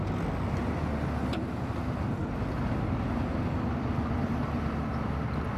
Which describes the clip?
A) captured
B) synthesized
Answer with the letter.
A